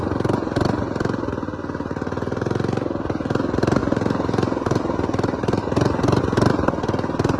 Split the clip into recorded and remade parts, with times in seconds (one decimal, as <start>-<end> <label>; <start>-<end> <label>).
0.0-3.8 recorded; 3.8-6.2 remade; 6.2-7.4 recorded